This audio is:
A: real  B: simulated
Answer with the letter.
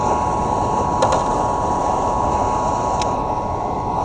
A